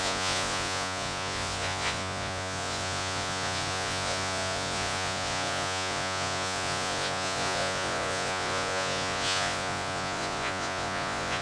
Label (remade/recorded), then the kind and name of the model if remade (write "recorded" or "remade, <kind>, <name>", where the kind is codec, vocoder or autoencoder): remade, vocoder, Vocos